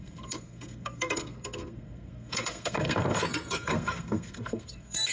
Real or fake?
fake